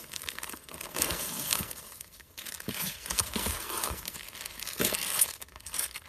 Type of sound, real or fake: fake